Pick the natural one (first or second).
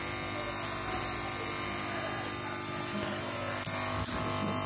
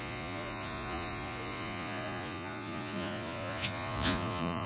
first